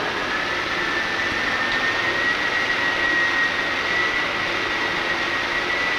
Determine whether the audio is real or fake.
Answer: real